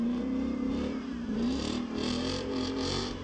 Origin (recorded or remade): remade